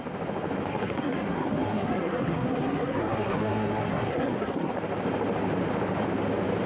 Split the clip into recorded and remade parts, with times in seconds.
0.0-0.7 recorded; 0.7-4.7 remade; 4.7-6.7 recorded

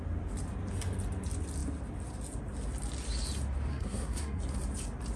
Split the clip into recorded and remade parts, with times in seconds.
0.0-3.7 recorded; 3.7-4.4 remade; 4.4-5.2 recorded

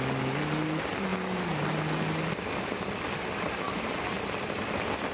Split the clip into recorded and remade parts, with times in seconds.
0.0-5.1 recorded

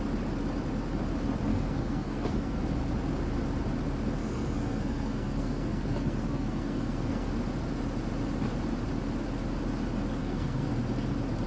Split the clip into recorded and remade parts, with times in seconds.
0.0-1.5 recorded; 1.5-2.6 remade; 2.6-4.2 recorded; 4.2-7.3 remade; 7.3-10.2 recorded; 10.2-10.7 remade; 10.7-11.5 recorded

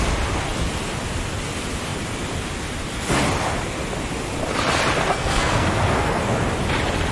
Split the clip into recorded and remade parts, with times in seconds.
0.0-5.1 recorded; 5.1-6.2 remade; 6.2-7.1 recorded